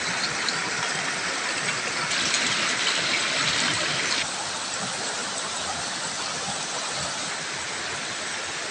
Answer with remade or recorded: recorded